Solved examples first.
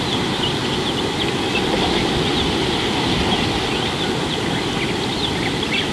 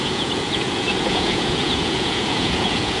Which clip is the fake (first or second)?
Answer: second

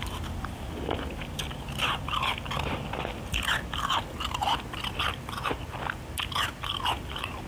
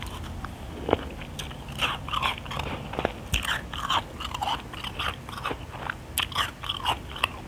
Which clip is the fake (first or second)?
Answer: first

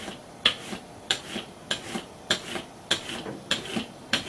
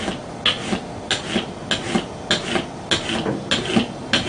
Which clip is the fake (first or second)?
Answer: first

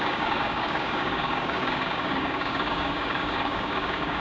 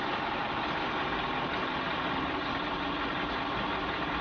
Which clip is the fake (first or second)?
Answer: first